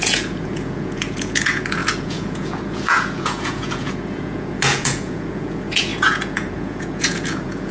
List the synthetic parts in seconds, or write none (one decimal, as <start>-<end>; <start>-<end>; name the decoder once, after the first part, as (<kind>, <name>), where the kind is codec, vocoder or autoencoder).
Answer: 0.0-7.7 (vocoder, Vocos)